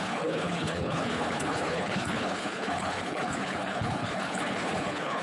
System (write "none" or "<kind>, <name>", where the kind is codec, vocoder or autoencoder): codec, HILCodec